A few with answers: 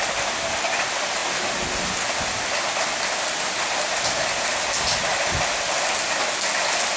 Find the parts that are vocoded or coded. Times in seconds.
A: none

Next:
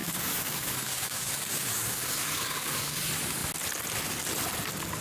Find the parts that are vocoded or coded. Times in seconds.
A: 0.0-3.0

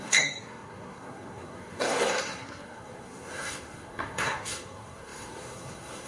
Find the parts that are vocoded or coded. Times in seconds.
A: 0.0-6.1

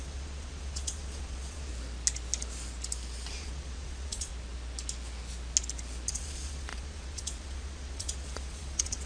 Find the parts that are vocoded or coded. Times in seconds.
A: 0.0-1.7; 3.3-4.3; 6.1-9.1

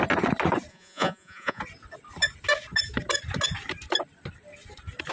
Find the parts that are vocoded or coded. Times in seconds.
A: 0.7-1.6

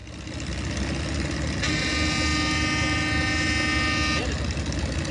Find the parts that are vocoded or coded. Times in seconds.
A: none